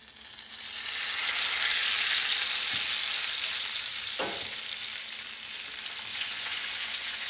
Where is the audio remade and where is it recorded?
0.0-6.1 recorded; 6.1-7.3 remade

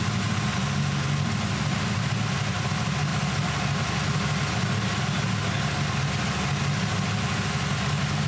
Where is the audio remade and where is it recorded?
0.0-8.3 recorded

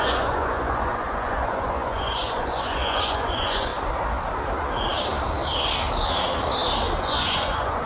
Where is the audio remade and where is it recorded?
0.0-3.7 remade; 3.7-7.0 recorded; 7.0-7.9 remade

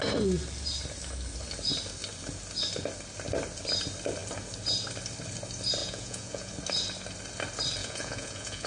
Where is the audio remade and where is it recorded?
0.0-5.8 recorded; 5.8-6.5 remade; 6.5-7.8 recorded; 7.8-8.7 remade